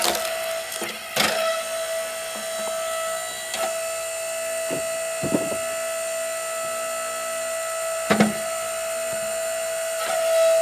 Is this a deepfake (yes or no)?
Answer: no